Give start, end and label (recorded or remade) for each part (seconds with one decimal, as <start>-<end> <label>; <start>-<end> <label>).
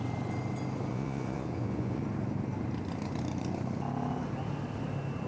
0.0-0.9 recorded; 0.9-2.0 remade; 2.0-5.3 recorded